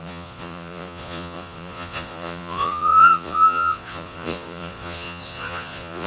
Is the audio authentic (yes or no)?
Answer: no